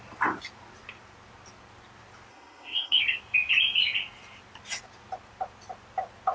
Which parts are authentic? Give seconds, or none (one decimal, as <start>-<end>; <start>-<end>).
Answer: 0.0-2.3; 3.0-6.3